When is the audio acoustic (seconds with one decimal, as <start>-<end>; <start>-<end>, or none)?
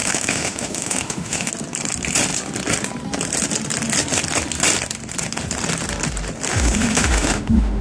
1.5-6.5